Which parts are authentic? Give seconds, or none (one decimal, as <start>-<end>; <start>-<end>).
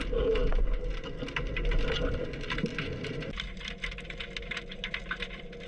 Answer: 0.0-5.7